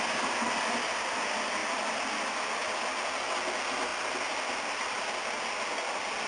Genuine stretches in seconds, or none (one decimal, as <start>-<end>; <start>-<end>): 0.0-6.3